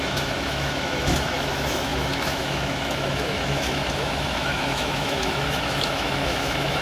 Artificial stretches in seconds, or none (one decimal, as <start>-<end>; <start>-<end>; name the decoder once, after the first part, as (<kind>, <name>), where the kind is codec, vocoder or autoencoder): 0.0-6.8 (autoencoder, DAC-VAE)